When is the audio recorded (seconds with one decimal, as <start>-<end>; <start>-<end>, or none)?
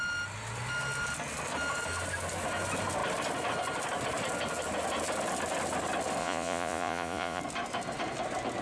0.0-6.2; 7.4-8.6